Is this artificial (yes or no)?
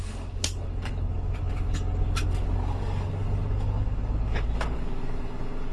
yes